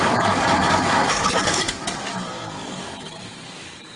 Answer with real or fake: fake